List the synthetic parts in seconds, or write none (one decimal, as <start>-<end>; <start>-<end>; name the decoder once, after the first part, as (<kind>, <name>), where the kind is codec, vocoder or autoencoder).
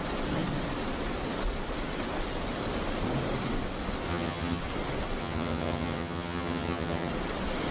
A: 4.1-4.6 (vocoder, HiFi-GAN); 5.2-7.1